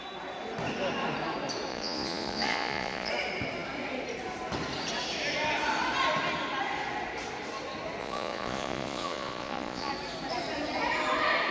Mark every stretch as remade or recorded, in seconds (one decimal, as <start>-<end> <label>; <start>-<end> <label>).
0.0-1.7 recorded; 1.7-3.1 remade; 3.1-8.0 recorded; 8.0-9.9 remade; 9.9-11.5 recorded